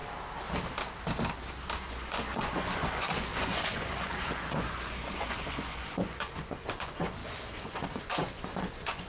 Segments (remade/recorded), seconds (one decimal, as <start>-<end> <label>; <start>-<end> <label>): 0.0-1.9 recorded; 1.9-9.1 remade